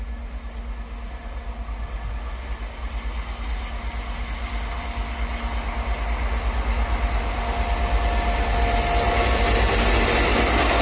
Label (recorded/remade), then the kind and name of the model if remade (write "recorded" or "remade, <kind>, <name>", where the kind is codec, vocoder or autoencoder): recorded